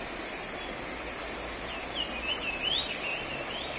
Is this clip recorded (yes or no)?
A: yes